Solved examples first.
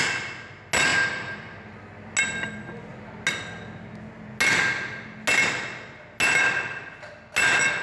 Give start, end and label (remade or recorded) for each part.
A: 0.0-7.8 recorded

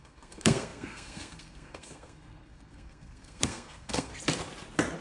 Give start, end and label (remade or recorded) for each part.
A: 0.0-4.1 remade; 4.1-5.0 recorded

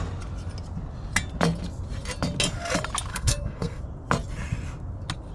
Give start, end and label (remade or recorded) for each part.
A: 0.0-3.1 recorded; 3.1-3.8 remade; 3.8-5.3 recorded

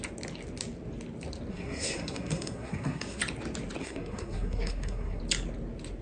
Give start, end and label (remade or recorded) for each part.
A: 0.0-1.5 recorded; 1.5-3.2 remade; 3.2-3.8 recorded; 3.8-5.2 remade; 5.2-6.0 recorded